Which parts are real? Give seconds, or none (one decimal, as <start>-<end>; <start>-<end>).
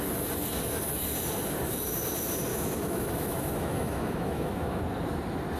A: 0.0-2.5; 4.8-5.6